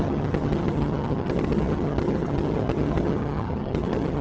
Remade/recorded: remade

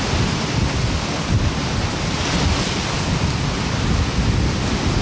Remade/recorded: recorded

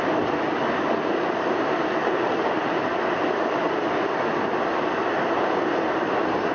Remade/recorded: recorded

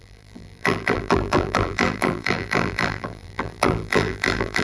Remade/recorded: remade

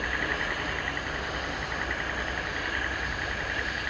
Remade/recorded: recorded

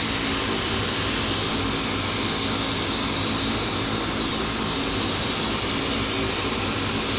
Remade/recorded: recorded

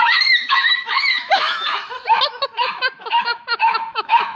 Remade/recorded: remade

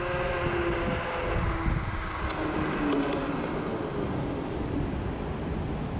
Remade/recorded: recorded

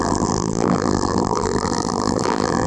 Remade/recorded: remade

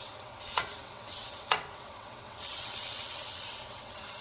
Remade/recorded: remade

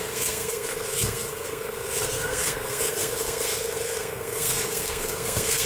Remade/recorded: remade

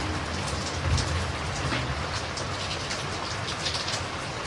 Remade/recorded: recorded